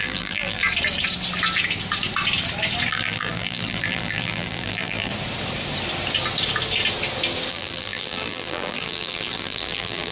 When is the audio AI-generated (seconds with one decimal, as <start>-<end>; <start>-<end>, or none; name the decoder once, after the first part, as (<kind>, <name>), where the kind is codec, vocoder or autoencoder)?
0.0-0.6 (vocoder, BigVGAN v2); 2.9-5.1; 7.5-10.1